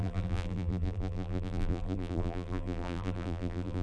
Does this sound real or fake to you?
fake